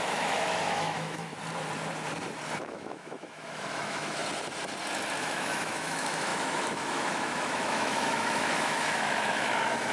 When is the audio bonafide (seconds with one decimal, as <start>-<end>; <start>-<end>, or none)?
1.3-2.6; 4.2-5.2